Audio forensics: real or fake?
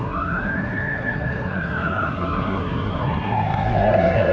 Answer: fake